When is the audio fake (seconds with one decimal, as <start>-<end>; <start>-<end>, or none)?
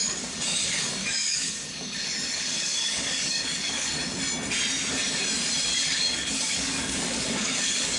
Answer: 0.0-3.9; 5.7-8.0